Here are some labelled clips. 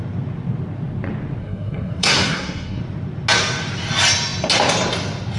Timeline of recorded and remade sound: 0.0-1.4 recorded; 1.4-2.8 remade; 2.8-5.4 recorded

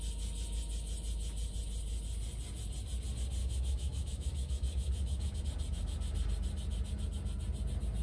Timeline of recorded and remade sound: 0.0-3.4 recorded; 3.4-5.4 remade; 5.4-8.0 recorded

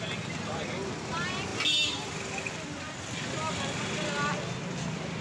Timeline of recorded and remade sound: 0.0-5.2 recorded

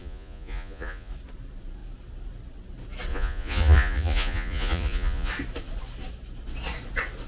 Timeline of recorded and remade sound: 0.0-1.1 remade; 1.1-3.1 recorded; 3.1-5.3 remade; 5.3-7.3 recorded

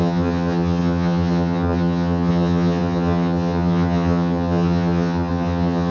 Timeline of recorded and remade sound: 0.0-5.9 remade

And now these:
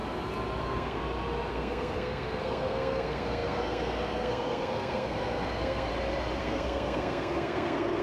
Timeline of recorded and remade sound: 0.0-0.6 recorded; 0.6-1.0 remade; 1.0-1.5 recorded; 1.5-5.9 remade; 5.9-6.4 recorded; 6.4-8.0 remade